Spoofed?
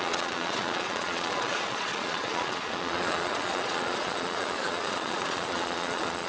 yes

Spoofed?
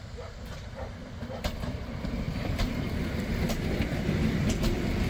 yes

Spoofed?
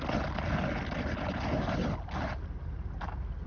no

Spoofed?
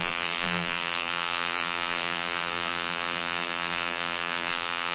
yes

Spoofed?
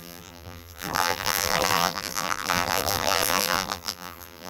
yes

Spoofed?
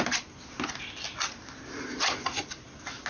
no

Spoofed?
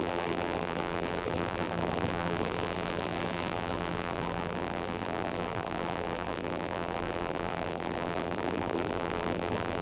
yes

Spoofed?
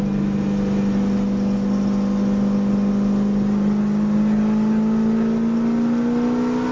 no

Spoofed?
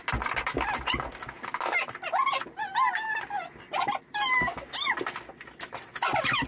no